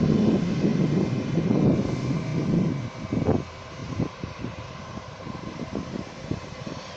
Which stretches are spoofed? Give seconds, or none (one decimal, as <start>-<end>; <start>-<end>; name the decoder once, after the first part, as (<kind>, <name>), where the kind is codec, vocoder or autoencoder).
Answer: 0.7-1.6 (vocoder, BigVGAN v2); 3.8-7.0